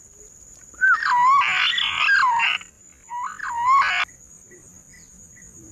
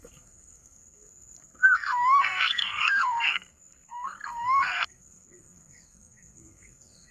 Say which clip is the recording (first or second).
first